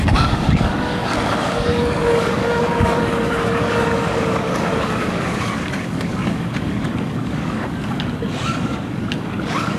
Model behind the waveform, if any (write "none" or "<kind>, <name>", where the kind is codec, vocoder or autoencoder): codec, DAC